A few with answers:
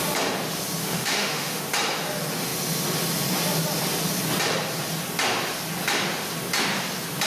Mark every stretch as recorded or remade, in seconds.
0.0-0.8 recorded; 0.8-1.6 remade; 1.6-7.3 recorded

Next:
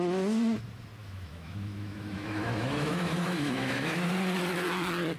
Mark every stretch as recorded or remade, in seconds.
0.0-1.0 recorded; 1.0-4.1 remade; 4.1-5.2 recorded

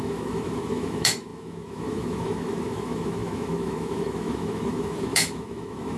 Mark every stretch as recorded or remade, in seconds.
0.0-6.0 remade

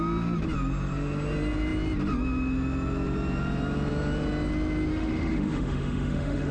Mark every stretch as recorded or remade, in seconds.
0.0-4.9 recorded; 4.9-6.5 remade

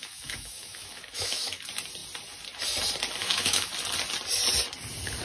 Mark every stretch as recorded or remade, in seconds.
0.0-1.6 remade; 1.6-3.2 recorded; 3.2-3.7 remade; 3.7-5.2 recorded

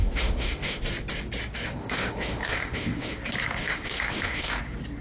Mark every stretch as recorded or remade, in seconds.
0.0-0.8 remade; 0.8-1.8 recorded; 1.8-3.2 remade; 3.2-3.6 recorded; 3.6-4.6 remade; 4.6-5.0 recorded

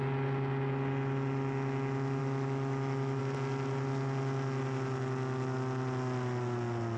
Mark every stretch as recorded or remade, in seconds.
0.0-2.2 recorded; 2.2-3.2 remade; 3.2-7.0 recorded

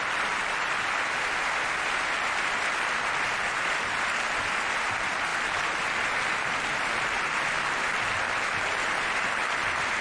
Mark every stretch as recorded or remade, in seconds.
0.0-10.0 recorded